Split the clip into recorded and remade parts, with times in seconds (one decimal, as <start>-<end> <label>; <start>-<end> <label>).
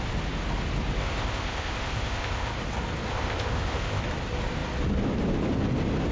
0.0-1.0 recorded; 1.0-2.5 remade; 2.5-3.1 recorded; 3.1-4.0 remade; 4.0-6.1 recorded